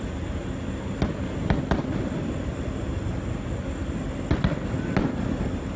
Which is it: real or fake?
real